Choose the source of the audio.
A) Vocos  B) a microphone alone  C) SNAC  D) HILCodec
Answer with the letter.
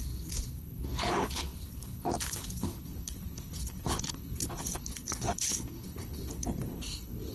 D